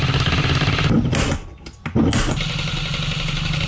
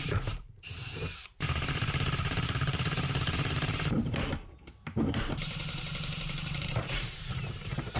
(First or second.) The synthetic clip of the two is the second